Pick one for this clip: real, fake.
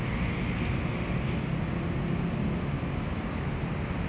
real